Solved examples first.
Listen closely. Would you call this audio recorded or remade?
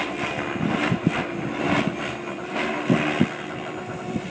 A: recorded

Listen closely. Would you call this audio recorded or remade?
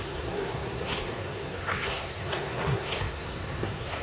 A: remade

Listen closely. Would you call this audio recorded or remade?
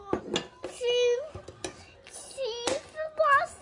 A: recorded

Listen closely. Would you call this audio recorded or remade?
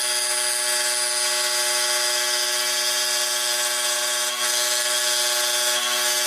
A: recorded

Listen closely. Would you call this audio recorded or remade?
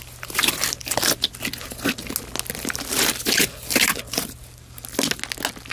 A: recorded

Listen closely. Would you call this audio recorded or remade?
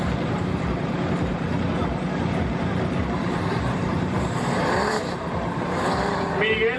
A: remade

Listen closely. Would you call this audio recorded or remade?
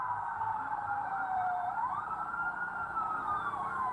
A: remade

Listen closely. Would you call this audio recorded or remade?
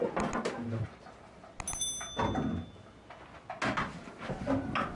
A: recorded